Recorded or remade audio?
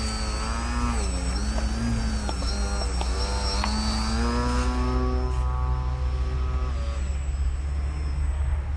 recorded